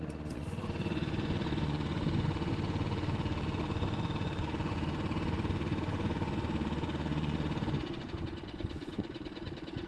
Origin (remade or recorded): remade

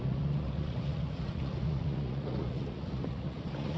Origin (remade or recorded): remade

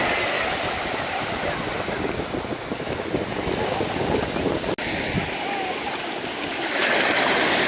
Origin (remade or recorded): recorded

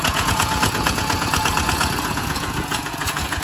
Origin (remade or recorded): remade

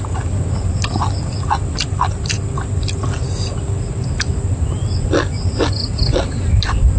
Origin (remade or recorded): recorded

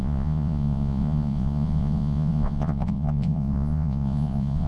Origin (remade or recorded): remade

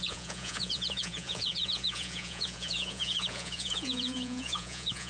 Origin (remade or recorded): remade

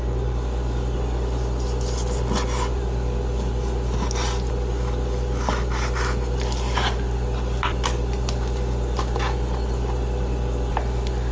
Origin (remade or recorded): recorded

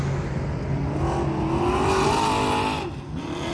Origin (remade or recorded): recorded